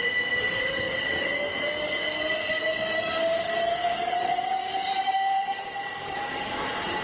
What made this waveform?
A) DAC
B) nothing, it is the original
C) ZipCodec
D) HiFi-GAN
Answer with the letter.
A